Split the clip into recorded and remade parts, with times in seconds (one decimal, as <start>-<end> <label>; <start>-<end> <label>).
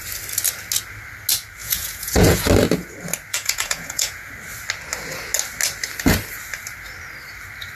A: 0.0-1.6 recorded; 1.6-2.5 remade; 2.5-3.3 recorded; 3.3-4.3 remade; 4.3-7.8 recorded